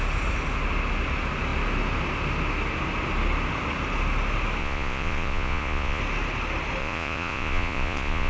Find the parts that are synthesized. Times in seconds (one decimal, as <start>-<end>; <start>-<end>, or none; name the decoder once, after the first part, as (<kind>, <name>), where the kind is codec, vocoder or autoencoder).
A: 4.6-6.0 (vocoder, Vocos); 6.8-8.3